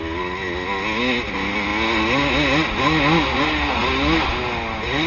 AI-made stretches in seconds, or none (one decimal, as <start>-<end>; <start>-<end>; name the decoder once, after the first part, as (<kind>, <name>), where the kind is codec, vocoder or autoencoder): none